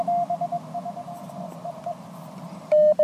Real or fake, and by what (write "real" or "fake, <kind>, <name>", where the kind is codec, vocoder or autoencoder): real